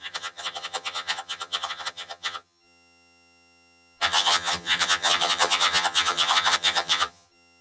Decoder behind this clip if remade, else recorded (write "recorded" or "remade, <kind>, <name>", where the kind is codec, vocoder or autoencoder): remade, vocoder, HiFi-GAN